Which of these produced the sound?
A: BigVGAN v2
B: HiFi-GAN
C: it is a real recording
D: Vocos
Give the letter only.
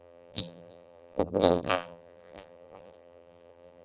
A